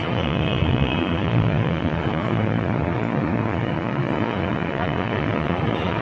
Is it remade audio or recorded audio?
remade